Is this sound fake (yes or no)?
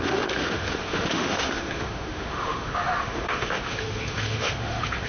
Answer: yes